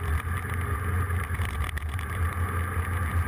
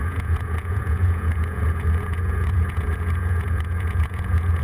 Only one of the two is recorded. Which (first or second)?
first